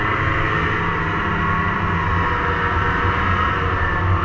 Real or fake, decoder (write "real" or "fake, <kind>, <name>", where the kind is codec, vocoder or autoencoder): real